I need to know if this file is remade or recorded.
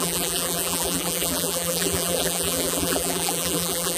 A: remade